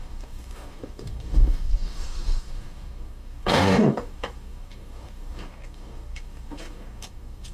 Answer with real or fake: fake